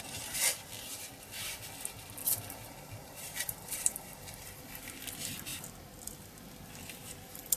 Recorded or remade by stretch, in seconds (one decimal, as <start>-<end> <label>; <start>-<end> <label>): 0.0-2.2 recorded; 2.2-4.7 remade; 4.7-7.6 recorded